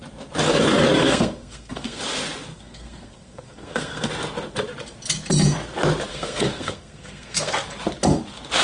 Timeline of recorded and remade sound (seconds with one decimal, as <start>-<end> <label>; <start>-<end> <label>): 0.0-1.0 recorded; 1.0-2.0 remade; 2.0-2.5 recorded; 2.5-4.1 remade; 4.1-6.1 recorded; 6.1-7.5 remade; 7.5-8.6 recorded